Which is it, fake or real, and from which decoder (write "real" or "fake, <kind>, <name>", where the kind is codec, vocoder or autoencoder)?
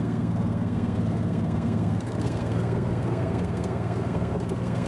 fake, codec, SNAC